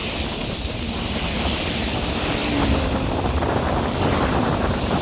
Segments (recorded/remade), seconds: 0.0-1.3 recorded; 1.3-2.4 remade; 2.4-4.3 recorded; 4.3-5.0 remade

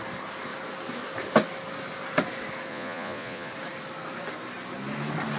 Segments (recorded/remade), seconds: 0.0-2.7 recorded; 2.7-3.5 remade; 3.5-5.4 recorded

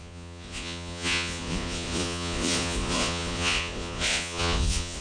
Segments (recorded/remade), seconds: 0.0-5.0 remade

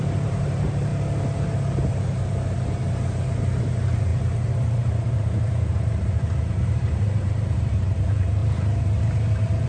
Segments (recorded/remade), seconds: 0.0-0.9 remade; 0.9-3.1 recorded; 3.1-9.7 remade